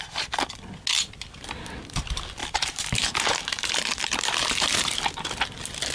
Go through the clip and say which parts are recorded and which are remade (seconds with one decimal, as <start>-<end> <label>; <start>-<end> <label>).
0.0-2.4 recorded; 2.4-5.0 remade; 5.0-5.9 recorded